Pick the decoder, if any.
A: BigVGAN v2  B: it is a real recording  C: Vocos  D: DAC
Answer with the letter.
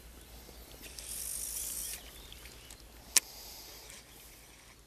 B